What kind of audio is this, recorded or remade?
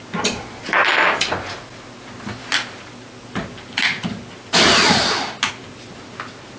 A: recorded